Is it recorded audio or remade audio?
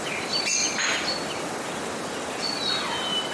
recorded